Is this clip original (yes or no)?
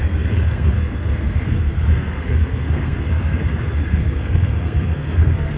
no